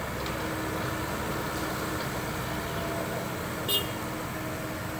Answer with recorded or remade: recorded